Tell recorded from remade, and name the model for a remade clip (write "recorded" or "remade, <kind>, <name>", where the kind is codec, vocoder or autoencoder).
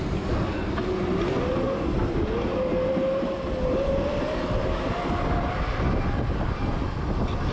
recorded